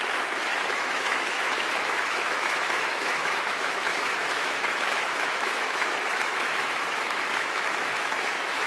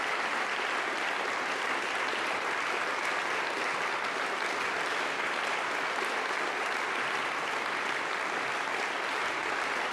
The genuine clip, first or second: second